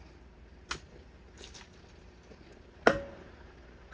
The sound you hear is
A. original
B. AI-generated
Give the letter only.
A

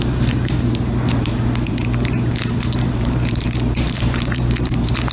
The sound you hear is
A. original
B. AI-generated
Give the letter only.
B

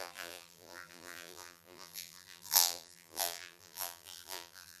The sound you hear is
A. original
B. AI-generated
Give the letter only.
B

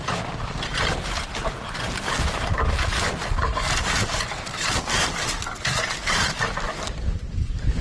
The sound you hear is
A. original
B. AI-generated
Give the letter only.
B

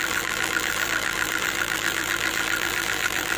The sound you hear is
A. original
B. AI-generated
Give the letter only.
B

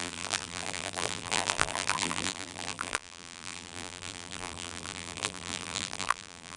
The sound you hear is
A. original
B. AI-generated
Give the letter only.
B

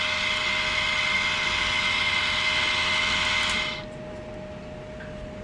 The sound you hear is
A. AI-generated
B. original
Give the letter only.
B